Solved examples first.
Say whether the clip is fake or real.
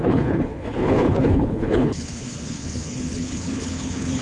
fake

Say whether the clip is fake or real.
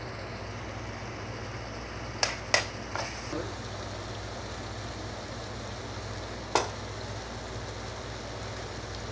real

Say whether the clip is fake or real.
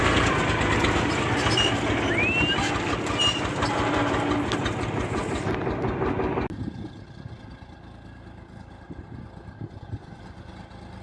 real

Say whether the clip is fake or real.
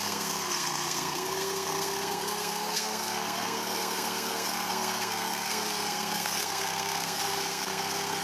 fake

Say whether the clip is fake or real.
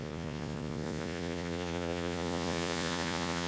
fake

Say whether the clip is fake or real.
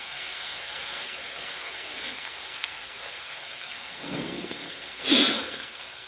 fake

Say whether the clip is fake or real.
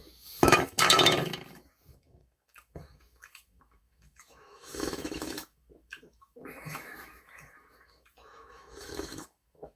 fake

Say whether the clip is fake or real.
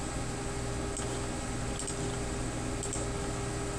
real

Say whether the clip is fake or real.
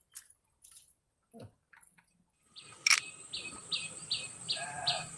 real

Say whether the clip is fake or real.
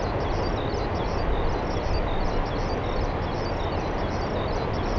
real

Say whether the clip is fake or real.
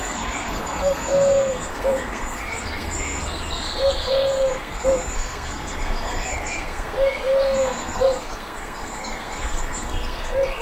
fake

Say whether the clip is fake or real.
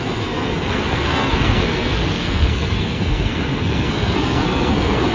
fake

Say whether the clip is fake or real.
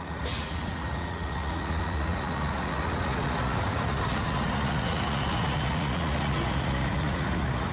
fake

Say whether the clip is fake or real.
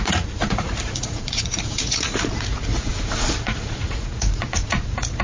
fake